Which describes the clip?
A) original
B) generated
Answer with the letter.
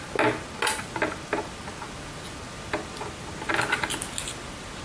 A